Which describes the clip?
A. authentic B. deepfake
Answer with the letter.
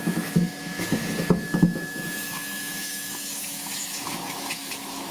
B